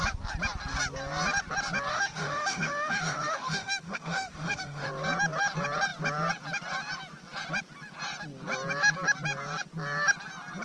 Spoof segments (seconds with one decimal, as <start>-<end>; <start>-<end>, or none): 1.9-4.9